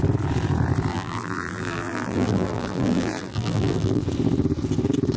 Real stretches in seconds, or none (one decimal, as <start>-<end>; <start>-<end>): 0.0-0.9; 4.0-5.2